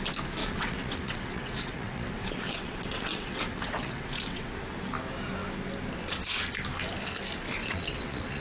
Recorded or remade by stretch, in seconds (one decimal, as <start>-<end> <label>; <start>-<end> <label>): 0.0-0.4 recorded; 0.4-4.5 remade; 4.5-7.6 recorded; 7.6-8.4 remade